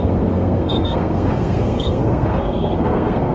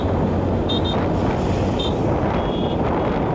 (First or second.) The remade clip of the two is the first